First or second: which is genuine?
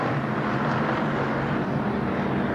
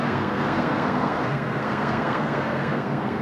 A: first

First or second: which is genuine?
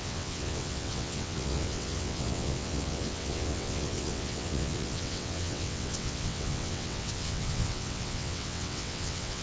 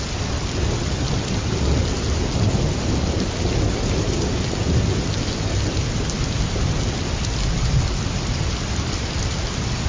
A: second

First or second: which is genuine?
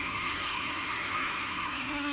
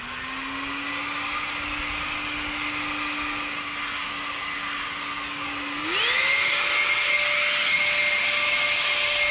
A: second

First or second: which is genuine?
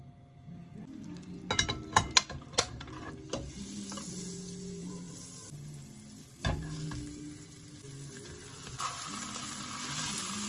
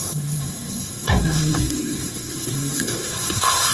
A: first